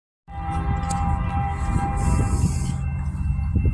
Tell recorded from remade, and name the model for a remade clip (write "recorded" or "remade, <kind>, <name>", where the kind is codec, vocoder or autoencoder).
recorded